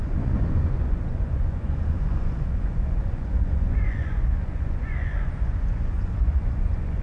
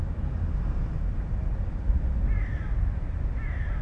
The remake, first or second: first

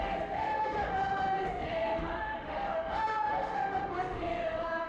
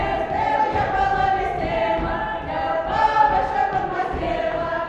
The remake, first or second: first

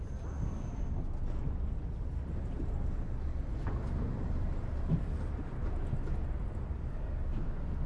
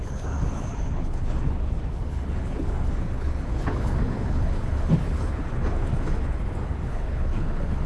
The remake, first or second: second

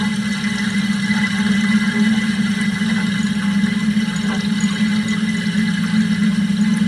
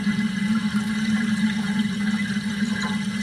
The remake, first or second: second